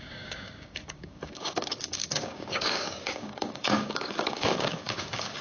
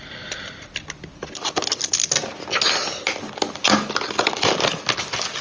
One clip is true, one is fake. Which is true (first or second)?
second